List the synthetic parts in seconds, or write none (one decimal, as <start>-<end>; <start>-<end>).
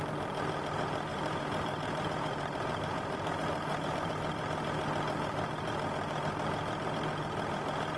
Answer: 1.1-4.1